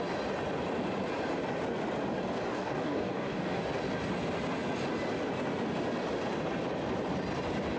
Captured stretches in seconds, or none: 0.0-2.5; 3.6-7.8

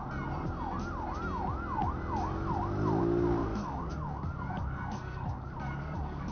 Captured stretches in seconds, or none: 0.0-3.4

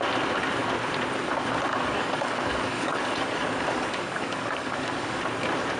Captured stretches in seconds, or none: 0.0-1.7; 5.2-5.8

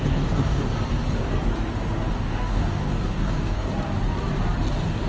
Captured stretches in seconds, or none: 0.7-2.1; 3.7-5.1

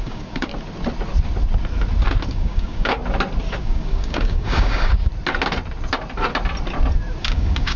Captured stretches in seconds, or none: 0.5-2.3; 3.0-3.6; 5.1-7.2

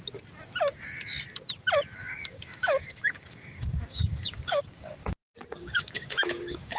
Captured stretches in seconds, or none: 0.0-2.0; 4.6-5.6